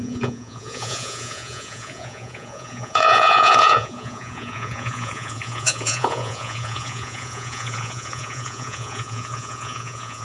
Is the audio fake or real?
fake